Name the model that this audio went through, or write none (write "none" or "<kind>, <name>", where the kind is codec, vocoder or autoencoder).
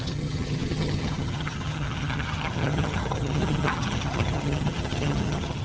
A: vocoder, HiFi-GAN